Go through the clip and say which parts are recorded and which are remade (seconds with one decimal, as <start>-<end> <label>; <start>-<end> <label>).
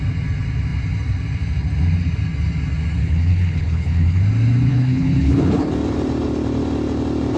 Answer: 0.0-3.0 recorded; 3.0-4.2 remade; 4.2-4.7 recorded; 4.7-5.6 remade; 5.6-7.4 recorded